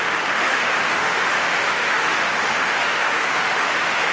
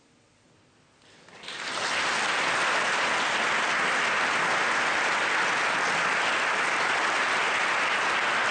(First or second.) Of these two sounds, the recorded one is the second